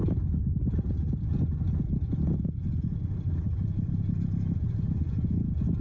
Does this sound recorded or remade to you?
recorded